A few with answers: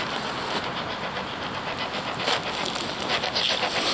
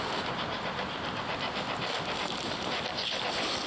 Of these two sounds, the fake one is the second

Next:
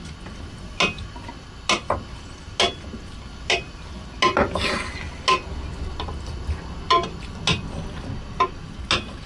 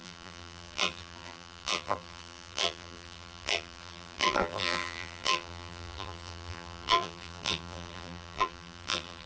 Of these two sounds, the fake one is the second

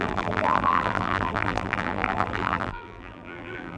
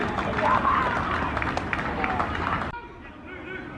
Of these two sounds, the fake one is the first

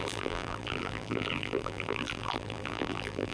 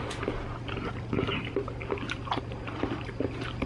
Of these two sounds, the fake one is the first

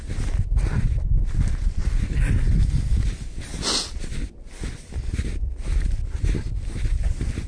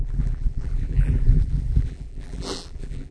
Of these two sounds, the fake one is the second